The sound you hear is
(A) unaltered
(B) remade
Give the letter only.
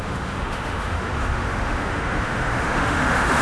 B